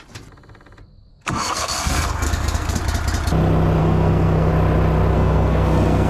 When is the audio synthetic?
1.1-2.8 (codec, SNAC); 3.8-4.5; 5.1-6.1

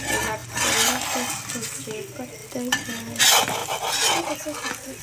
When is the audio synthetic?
3.6-4.2 (vocoder, BigVGAN v2)

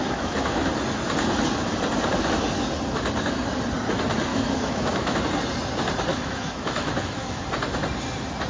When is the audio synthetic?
0.0-0.7 (autoencoder, DAC-VAE); 4.3-5.2; 6.1-7.4

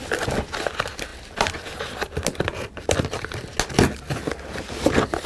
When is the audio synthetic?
none

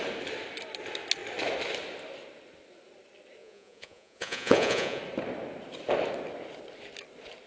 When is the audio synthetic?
3.4-5.0 (vocoder, Vocos)

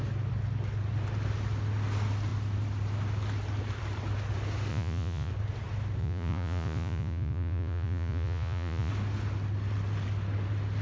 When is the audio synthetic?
4.7-5.3 (vocoder, Vocos); 6.0-8.9